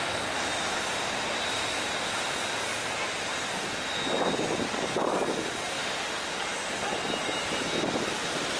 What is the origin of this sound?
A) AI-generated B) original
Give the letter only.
B